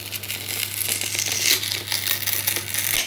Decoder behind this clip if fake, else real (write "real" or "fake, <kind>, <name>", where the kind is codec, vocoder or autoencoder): real